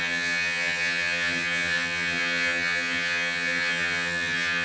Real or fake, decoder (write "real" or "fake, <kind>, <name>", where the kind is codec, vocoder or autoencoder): fake, vocoder, HiFi-GAN